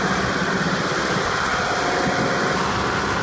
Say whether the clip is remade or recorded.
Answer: recorded